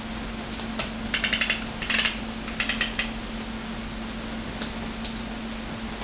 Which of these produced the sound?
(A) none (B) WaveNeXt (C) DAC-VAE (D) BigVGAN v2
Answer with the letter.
A